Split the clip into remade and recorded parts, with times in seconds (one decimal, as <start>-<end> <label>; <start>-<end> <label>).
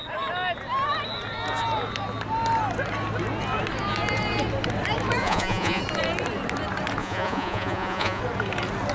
0.0-5.2 recorded; 5.2-5.8 remade; 5.8-7.0 recorded; 7.0-8.2 remade; 8.2-8.9 recorded